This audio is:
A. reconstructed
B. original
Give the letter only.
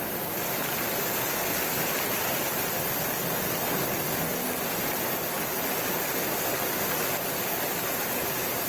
B